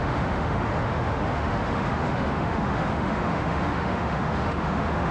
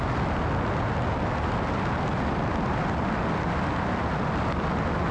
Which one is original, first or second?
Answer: second